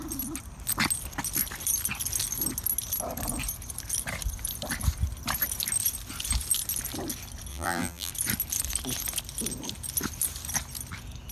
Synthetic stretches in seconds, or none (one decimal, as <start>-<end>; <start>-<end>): 7.5-8.1